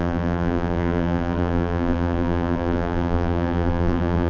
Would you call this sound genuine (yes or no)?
no